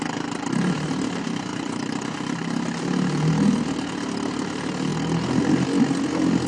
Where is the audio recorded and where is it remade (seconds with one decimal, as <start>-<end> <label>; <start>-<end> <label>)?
0.0-1.5 recorded; 1.5-2.8 remade; 2.8-6.5 recorded